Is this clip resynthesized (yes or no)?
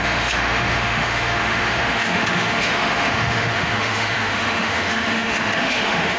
yes